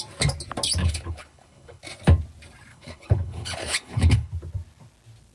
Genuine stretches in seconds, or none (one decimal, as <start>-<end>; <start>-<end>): 0.0-0.8; 1.8-2.7; 4.3-5.3